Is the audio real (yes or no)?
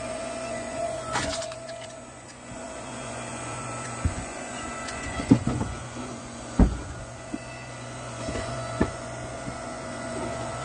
no